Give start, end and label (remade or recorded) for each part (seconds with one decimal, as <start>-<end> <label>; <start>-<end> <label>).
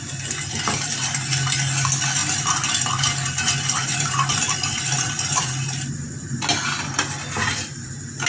0.0-2.2 recorded; 2.2-2.9 remade; 2.9-3.8 recorded; 3.8-6.4 remade; 6.4-8.3 recorded